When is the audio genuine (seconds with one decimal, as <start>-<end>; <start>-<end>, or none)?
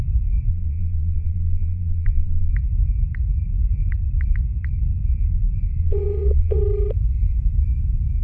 0.0-0.5; 2.5-5.8; 6.6-8.2